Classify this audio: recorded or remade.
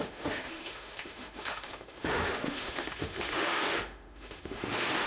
remade